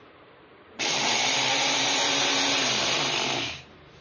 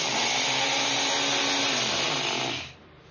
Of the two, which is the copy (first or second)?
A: first